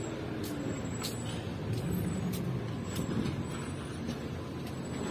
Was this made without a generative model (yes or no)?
yes